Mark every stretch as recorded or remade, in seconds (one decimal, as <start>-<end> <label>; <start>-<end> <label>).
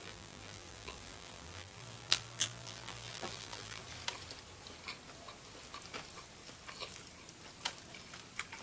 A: 0.0-3.8 remade; 3.8-8.6 recorded